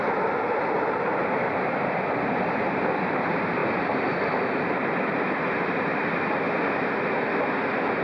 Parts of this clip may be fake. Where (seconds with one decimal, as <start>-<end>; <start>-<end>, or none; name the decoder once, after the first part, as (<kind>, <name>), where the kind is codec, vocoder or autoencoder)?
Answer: none